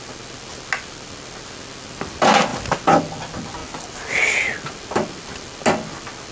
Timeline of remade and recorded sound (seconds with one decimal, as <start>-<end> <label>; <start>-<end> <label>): 0.0-6.3 recorded